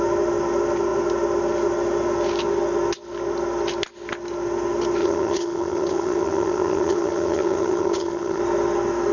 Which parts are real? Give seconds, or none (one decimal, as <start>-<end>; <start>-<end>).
0.0-5.0; 8.4-9.1